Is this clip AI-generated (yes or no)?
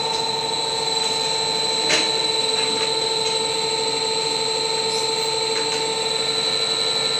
no